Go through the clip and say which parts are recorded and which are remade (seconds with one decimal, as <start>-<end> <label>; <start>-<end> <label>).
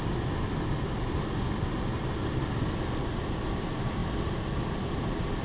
0.0-5.4 recorded